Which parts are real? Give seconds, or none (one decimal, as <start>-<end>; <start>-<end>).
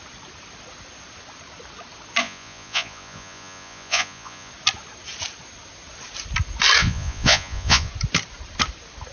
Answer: 0.0-2.2; 4.5-6.8; 7.9-9.1